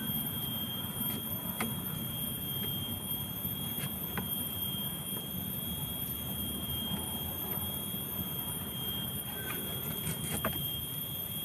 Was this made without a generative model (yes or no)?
no